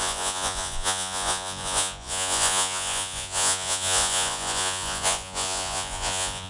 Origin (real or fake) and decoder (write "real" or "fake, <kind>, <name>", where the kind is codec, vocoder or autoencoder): fake, vocoder, Vocos